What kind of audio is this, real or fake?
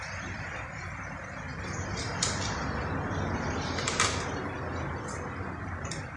real